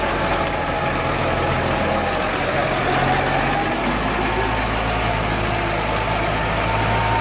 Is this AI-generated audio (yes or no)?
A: no